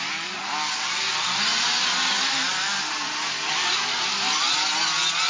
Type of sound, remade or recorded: recorded